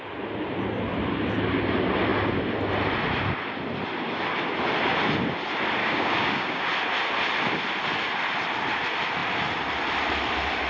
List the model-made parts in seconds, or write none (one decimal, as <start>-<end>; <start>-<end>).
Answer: 5.8-6.6